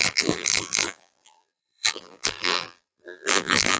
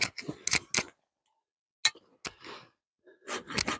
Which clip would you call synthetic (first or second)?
first